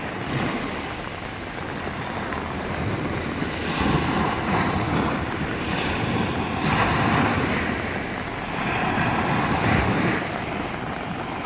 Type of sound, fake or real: real